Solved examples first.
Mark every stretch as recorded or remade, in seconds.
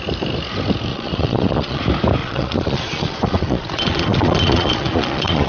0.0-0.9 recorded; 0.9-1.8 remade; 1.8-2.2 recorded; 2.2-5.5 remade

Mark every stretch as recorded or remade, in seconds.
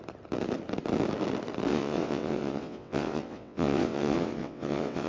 0.0-1.7 recorded; 1.7-5.1 remade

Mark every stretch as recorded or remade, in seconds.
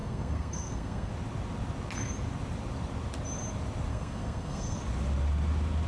0.0-1.1 remade; 1.1-3.9 recorded; 3.9-4.8 remade; 4.8-5.9 recorded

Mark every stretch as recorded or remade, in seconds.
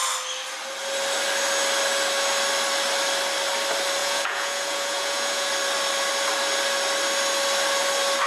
0.0-4.0 recorded; 4.0-5.5 remade; 5.5-8.3 recorded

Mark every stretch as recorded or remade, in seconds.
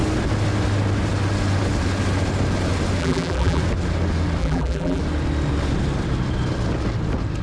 0.0-3.0 recorded; 3.0-3.6 remade; 3.6-4.4 recorded; 4.4-5.0 remade; 5.0-7.4 recorded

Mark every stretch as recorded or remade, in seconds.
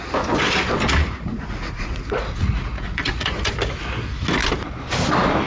0.0-1.0 recorded; 1.0-3.5 remade; 3.5-5.5 recorded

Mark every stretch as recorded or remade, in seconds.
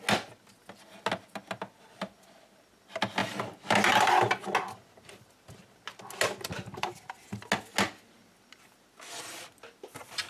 0.0-10.3 recorded